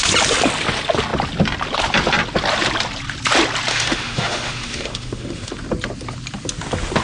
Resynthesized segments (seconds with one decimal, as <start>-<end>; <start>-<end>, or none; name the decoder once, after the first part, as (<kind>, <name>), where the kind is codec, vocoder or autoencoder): 3.7-5.5 (autoencoder, DAC-VAE)